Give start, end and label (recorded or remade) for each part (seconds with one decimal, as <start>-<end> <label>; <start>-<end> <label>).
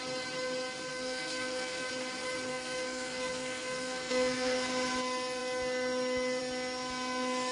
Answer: 0.0-0.9 recorded; 0.9-1.9 remade; 1.9-2.5 recorded; 2.5-4.7 remade; 4.7-7.5 recorded